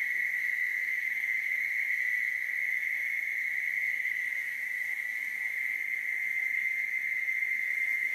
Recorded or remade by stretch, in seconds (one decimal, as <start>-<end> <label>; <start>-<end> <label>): 0.0-0.6 recorded; 0.6-1.7 remade; 1.7-8.1 recorded